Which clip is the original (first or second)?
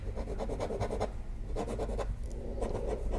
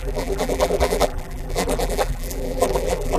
first